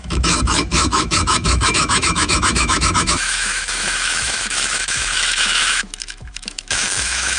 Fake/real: fake